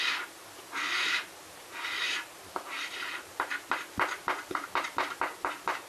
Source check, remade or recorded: remade